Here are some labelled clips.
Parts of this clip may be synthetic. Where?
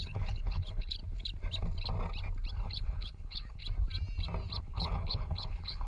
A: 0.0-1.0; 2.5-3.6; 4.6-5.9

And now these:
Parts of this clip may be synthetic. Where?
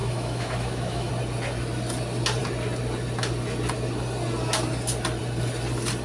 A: 0.0-1.1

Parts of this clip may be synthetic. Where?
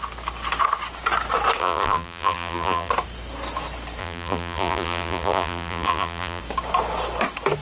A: 1.6-2.9; 4.0-6.4